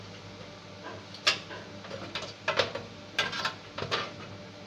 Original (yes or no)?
yes